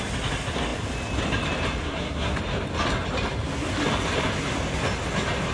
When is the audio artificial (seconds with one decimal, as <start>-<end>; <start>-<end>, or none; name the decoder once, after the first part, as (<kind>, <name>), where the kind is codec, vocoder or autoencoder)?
1.8-2.4 (codec, SNAC)